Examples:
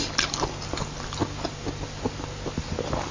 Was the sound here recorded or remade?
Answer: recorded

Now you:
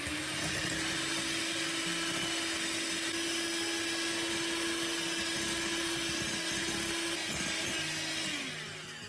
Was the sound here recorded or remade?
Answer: recorded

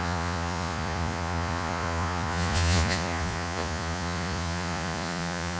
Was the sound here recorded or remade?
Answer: remade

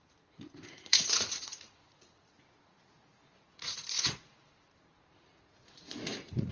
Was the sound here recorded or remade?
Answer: remade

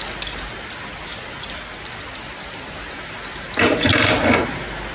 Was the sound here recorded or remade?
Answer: recorded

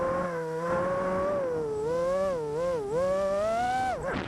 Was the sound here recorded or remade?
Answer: recorded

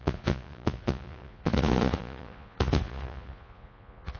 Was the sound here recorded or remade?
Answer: remade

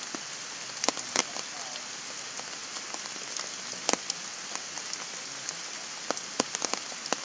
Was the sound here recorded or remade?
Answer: recorded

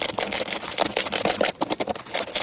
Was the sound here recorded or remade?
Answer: recorded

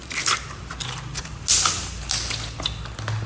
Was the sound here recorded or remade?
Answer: recorded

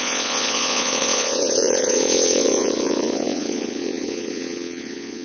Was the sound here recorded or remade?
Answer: remade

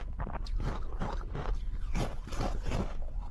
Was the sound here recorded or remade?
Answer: recorded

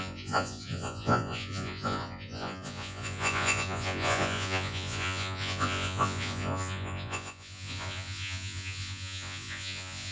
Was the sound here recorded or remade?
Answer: remade